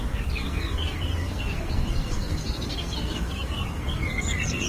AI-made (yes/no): yes